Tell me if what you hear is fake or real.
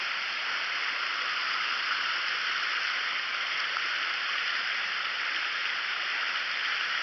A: real